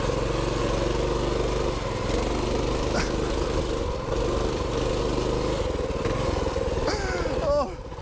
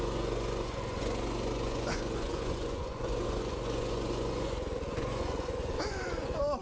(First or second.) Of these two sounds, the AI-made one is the second